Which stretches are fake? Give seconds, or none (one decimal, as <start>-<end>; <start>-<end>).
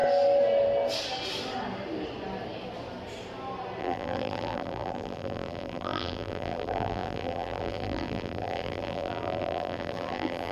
3.8-10.5